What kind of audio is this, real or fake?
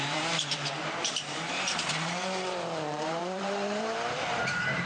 fake